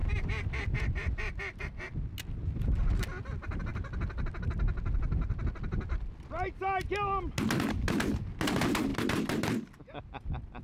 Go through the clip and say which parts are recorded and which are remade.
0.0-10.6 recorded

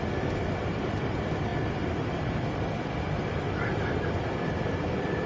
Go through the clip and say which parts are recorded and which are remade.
0.0-5.3 remade

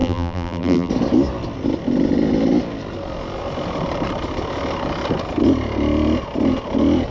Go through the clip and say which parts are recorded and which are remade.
0.0-0.9 remade; 0.9-7.1 recorded

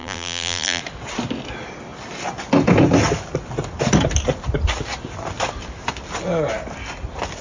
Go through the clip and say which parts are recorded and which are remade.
0.0-0.8 remade; 0.8-7.4 recorded

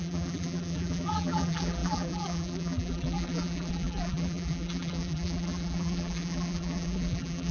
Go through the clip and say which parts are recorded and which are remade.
0.0-7.5 remade

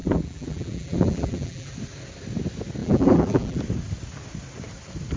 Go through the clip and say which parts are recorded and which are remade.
0.0-1.7 remade; 1.7-2.8 recorded; 2.8-3.6 remade; 3.6-5.2 recorded